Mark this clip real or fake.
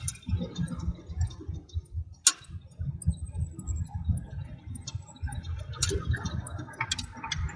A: real